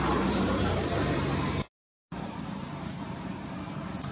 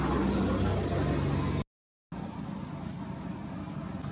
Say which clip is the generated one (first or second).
first